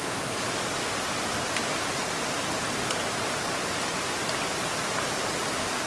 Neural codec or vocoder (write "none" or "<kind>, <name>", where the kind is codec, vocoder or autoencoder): none